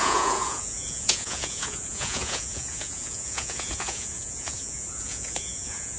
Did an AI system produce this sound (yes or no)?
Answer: yes